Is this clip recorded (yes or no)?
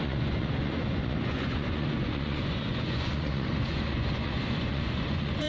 no